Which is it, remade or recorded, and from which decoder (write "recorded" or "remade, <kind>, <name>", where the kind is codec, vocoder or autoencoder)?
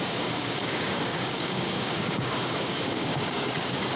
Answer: remade, codec, DAC